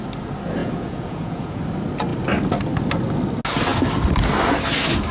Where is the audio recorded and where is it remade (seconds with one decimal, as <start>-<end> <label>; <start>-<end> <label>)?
0.0-0.6 recorded; 0.6-1.6 remade; 1.6-5.1 recorded